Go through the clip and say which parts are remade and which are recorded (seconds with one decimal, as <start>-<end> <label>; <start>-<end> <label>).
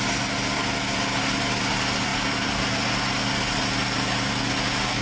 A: 0.0-5.0 recorded